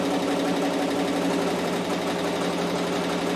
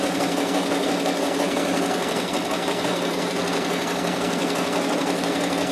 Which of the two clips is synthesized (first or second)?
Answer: second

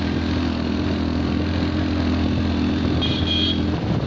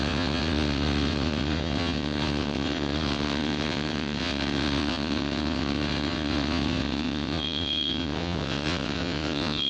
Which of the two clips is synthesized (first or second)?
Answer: second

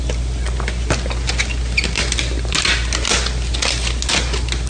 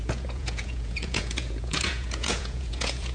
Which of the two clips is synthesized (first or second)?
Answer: second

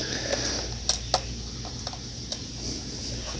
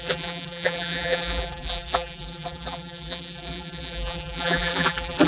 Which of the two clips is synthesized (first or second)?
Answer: second